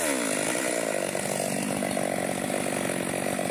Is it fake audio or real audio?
real